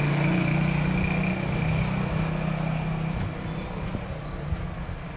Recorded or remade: recorded